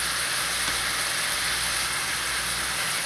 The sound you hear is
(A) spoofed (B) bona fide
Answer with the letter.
B